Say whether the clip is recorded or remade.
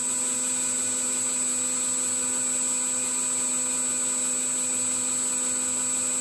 recorded